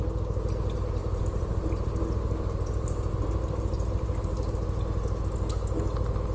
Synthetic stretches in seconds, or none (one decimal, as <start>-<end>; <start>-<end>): 1.0-4.8